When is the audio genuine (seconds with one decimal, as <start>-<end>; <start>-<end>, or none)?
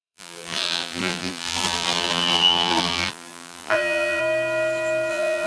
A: 4.2-5.1